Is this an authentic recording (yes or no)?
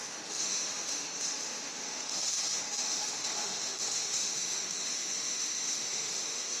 no